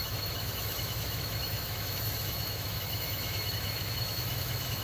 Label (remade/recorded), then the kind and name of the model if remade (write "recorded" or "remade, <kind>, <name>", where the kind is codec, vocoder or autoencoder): remade, autoencoder, DAC-VAE